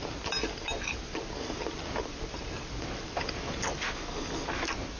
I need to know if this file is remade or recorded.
recorded